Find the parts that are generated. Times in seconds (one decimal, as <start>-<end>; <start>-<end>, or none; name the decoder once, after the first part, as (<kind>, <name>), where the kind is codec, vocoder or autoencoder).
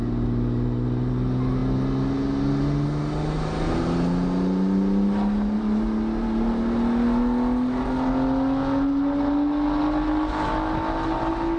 none